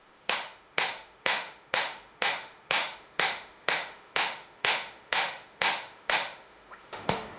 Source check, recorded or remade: remade